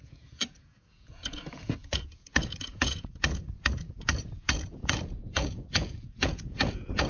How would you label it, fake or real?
fake